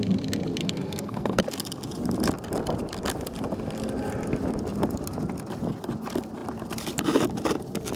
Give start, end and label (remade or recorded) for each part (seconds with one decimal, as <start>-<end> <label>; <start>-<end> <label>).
0.0-0.6 recorded; 0.6-1.4 remade; 1.4-8.0 recorded